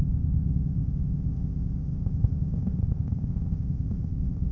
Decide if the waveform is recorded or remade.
remade